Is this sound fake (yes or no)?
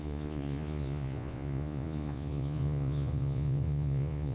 yes